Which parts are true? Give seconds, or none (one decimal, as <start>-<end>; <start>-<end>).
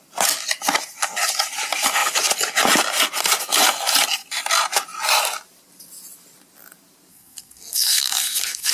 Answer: 0.0-7.1